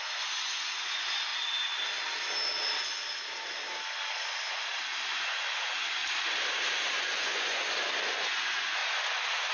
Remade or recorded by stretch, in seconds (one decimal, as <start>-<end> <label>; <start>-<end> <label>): 0.0-1.3 remade; 1.3-5.1 recorded; 5.1-6.0 remade; 6.0-6.9 recorded; 6.9-8.8 remade; 8.8-9.5 recorded

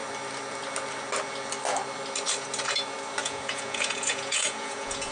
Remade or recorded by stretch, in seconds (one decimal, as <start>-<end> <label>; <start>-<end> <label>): 0.0-3.2 recorded; 3.2-5.1 remade

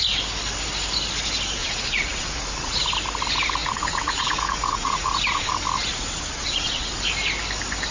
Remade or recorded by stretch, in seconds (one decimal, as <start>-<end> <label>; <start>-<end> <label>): 0.0-1.6 recorded; 1.6-2.8 remade; 2.8-3.6 recorded; 3.6-5.5 remade; 5.5-5.9 recorded; 5.9-7.0 remade; 7.0-7.9 recorded

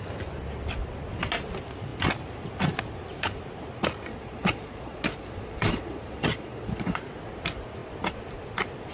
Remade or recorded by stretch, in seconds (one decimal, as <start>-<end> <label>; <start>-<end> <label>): 0.0-4.1 recorded; 4.1-7.0 remade; 7.0-8.9 recorded

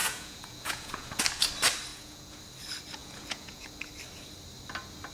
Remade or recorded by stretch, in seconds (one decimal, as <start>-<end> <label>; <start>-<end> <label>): 0.0-1.2 remade; 1.2-1.9 recorded; 1.9-2.4 remade; 2.4-3.0 recorded; 3.0-3.7 remade; 3.7-5.1 recorded

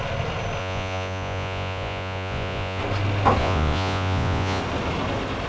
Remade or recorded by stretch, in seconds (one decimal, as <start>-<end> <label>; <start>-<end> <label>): 0.0-0.6 recorded; 0.6-2.8 remade; 2.8-3.4 recorded; 3.4-4.6 remade; 4.6-5.5 recorded

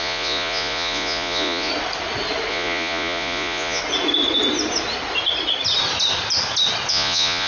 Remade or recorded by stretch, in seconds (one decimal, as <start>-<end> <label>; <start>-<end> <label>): 0.0-1.7 remade; 1.7-2.5 recorded; 2.5-3.8 remade; 3.8-6.9 recorded; 6.9-7.5 remade